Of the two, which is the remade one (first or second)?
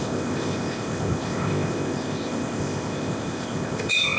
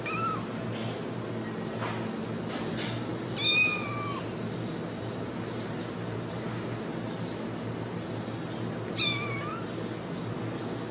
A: first